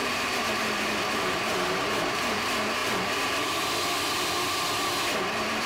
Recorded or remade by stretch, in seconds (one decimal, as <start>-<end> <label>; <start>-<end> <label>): 0.0-2.4 remade; 2.4-5.7 recorded